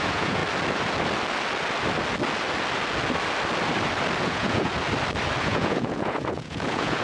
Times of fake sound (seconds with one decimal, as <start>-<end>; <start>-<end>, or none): 0.0-0.4; 4.2-4.7; 5.4-7.0